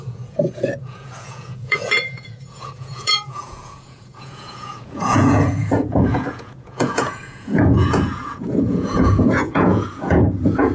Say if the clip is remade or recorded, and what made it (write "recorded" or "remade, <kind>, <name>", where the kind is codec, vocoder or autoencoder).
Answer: remade, vocoder, Vocos